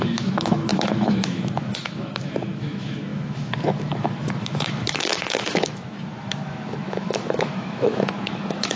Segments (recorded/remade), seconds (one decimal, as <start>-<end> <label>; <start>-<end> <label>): 0.0-8.8 remade